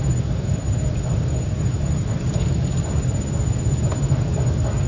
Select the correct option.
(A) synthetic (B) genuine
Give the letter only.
B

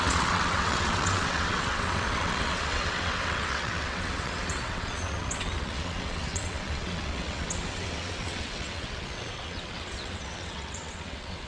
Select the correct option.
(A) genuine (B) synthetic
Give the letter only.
B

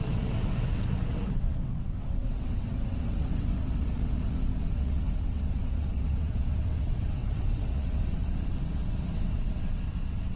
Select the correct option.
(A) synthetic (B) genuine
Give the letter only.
A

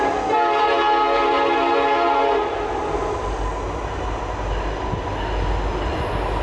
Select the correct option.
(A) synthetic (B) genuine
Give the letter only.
B